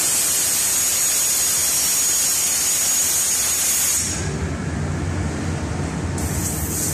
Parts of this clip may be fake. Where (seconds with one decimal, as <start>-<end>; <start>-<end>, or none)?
none